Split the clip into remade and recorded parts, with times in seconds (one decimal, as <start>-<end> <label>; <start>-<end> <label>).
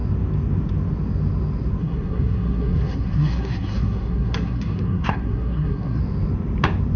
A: 0.0-1.8 recorded; 1.8-6.0 remade; 6.0-7.0 recorded